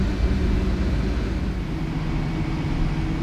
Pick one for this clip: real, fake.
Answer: real